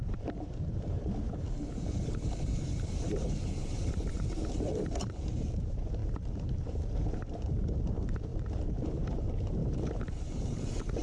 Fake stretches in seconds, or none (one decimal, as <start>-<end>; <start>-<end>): 0.0-11.0

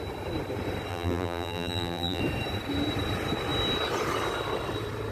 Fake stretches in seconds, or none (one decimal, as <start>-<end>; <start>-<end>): 0.9-2.2